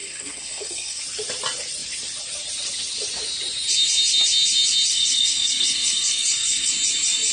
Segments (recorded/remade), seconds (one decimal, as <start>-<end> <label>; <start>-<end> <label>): 0.0-1.0 remade; 1.0-4.9 recorded; 4.9-6.7 remade; 6.7-7.3 recorded